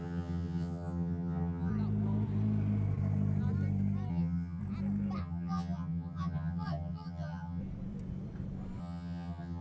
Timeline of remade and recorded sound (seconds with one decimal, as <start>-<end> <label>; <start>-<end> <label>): 0.0-1.7 remade; 1.7-4.1 recorded; 4.1-4.6 remade; 4.6-5.2 recorded; 5.2-7.6 remade; 7.6-8.8 recorded; 8.8-9.6 remade